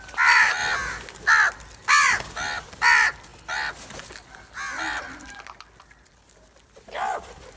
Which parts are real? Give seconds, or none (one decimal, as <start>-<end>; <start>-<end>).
0.0-7.6